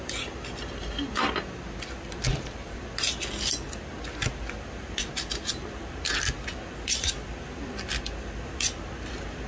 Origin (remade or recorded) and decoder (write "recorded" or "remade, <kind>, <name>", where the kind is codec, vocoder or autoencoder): recorded